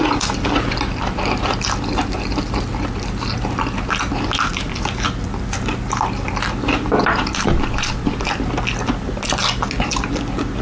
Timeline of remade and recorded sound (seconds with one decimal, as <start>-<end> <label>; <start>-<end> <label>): 0.0-10.6 recorded

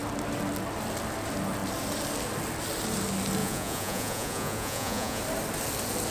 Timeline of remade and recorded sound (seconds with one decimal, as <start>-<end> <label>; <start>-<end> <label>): 0.0-3.4 recorded; 3.4-5.2 remade; 5.2-6.1 recorded

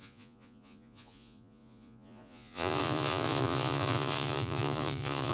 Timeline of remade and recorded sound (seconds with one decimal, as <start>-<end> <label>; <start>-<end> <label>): 0.0-5.3 remade